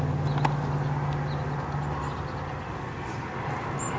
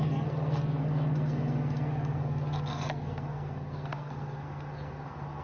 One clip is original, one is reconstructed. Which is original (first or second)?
first